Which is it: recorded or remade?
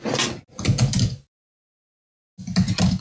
recorded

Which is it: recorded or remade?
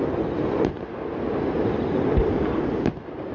recorded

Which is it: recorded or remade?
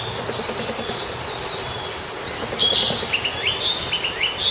recorded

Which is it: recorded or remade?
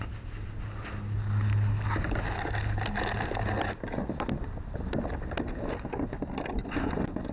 recorded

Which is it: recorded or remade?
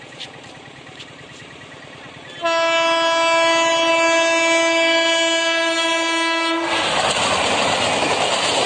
recorded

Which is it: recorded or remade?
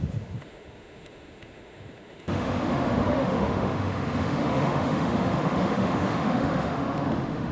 remade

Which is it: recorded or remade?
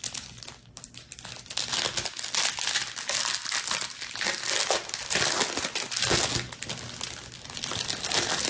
recorded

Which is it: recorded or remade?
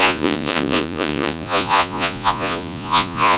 remade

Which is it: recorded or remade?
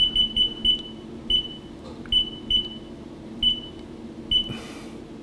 recorded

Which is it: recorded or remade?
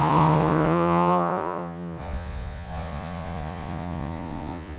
remade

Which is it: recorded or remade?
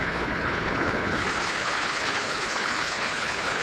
remade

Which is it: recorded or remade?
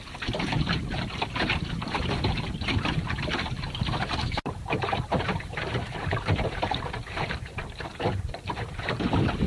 remade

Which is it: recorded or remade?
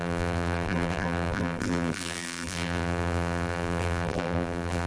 remade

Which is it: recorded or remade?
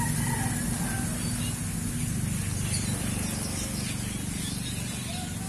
recorded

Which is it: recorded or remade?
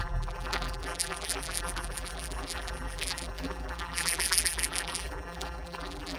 remade